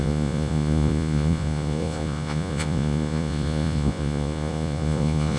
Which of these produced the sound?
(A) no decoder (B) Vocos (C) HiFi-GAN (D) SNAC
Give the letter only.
B